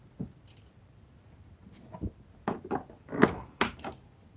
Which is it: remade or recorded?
recorded